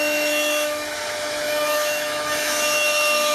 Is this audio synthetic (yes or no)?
yes